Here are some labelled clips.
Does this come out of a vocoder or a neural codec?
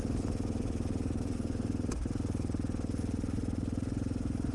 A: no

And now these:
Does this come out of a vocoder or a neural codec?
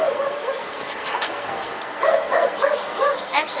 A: yes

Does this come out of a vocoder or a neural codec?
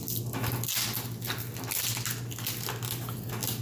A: no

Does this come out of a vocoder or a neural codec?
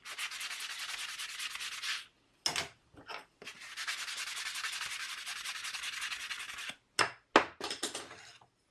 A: no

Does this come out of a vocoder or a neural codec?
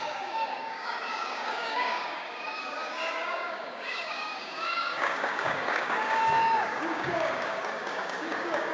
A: yes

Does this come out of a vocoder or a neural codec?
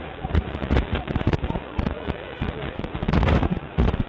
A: yes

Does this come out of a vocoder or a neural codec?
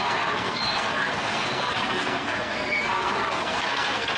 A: yes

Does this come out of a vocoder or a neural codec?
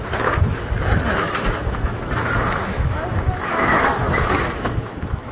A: yes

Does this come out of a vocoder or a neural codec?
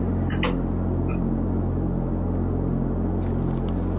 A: no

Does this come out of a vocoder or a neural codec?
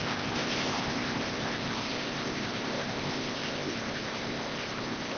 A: yes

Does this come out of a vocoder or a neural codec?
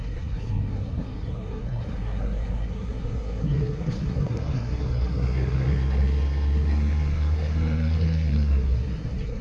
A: yes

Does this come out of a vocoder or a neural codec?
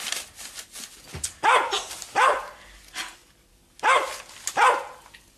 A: no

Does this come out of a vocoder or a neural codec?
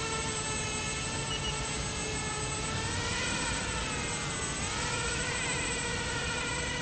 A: no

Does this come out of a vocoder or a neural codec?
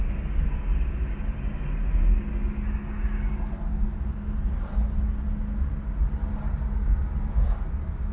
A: no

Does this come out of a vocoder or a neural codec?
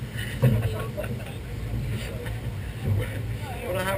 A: no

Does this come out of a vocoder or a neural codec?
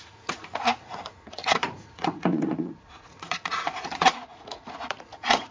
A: yes